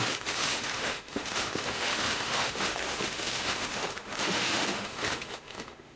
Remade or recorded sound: remade